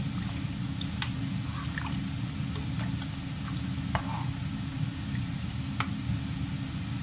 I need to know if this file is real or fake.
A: real